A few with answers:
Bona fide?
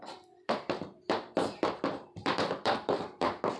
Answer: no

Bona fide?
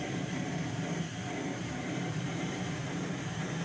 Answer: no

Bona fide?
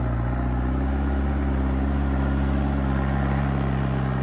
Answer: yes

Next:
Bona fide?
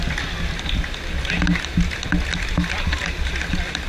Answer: yes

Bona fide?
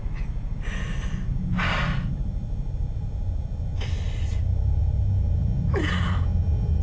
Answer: yes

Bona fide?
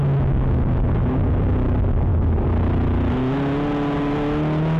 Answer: yes